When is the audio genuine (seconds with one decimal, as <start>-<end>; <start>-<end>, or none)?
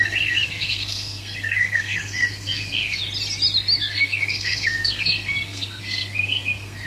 3.0-3.8